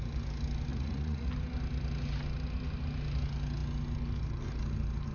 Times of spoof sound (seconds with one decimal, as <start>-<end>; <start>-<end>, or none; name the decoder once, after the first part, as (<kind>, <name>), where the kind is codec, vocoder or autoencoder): 0.7-1.3 (vocoder, Vocos)